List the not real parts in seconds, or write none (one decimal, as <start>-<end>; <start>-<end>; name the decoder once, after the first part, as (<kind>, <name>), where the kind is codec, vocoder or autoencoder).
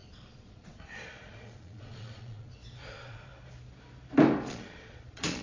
0.0-3.3 (vocoder, Vocos); 4.5-5.4